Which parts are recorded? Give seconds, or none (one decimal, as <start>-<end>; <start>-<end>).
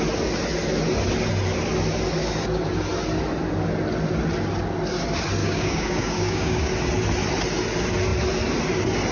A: 0.0-5.4; 6.7-9.1